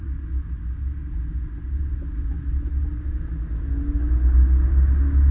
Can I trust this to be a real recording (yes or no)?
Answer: yes